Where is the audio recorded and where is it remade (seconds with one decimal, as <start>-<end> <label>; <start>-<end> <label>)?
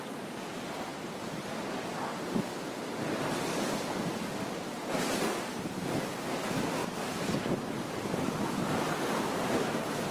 0.0-10.1 recorded